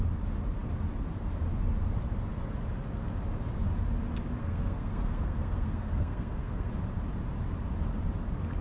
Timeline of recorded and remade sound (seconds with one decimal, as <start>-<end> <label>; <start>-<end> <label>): 0.0-4.4 recorded; 4.4-6.7 remade; 6.7-8.6 recorded